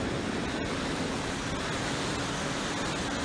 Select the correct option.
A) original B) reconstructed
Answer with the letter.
A